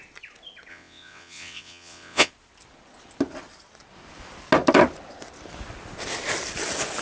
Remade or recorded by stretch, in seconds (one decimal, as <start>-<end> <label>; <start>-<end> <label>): 0.0-0.7 recorded; 0.7-2.3 remade; 2.3-7.0 recorded